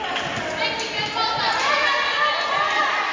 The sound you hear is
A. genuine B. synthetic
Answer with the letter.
A